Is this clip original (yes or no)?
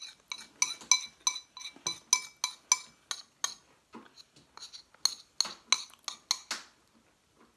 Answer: yes